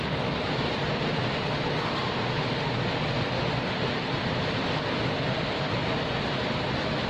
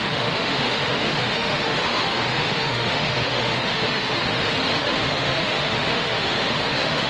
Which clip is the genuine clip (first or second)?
first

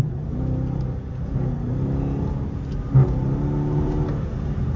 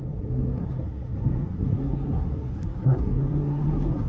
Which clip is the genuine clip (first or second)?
first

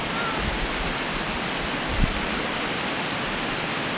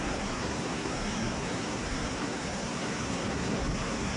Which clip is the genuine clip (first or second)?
first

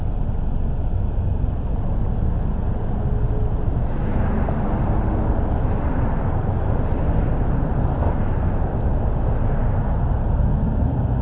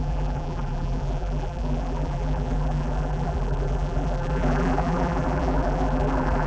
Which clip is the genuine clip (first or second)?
first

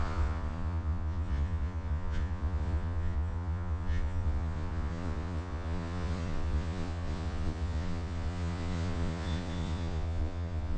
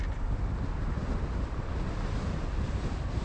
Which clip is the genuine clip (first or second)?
second